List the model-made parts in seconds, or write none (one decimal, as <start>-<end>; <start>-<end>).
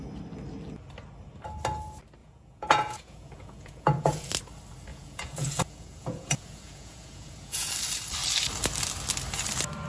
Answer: 2.2-4.3; 4.9-7.7